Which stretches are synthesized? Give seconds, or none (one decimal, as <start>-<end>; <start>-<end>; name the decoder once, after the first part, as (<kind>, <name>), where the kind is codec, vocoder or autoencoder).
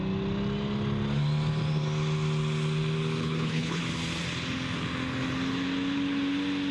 3.2-3.8 (codec, HILCodec)